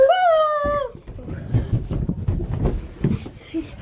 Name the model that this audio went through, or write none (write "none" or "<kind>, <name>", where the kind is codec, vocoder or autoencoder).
none